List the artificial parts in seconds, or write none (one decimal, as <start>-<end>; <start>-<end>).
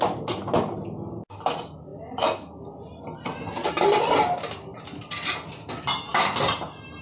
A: none